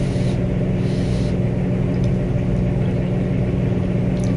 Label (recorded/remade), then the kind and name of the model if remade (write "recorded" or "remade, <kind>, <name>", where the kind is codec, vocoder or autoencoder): recorded